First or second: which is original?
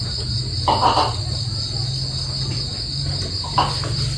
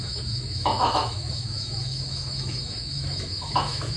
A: first